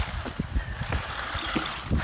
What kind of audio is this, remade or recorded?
recorded